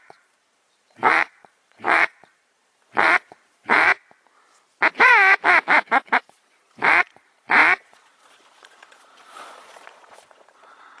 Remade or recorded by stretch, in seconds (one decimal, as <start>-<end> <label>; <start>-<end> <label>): 0.0-3.9 remade; 3.9-4.9 recorded; 4.9-11.0 remade